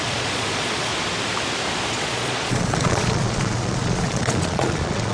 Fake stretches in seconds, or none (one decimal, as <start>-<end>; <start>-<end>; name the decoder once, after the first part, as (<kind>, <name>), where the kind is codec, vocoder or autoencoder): 0.0-0.9 (vocoder, Vocos); 1.9-5.1